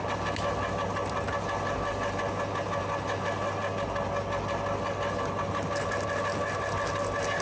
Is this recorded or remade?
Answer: recorded